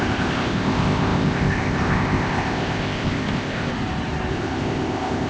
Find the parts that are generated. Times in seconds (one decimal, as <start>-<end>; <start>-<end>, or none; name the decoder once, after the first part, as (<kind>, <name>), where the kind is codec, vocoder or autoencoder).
0.0-3.7 (codec, ZipCodec); 4.3-5.3